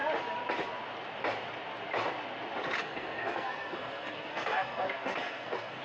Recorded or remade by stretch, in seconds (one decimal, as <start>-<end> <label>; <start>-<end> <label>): 0.0-2.8 recorded; 2.8-5.8 remade